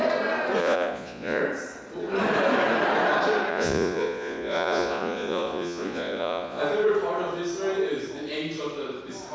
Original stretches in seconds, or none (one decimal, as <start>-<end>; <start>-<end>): 0.0-0.6; 1.4-3.5; 6.6-9.3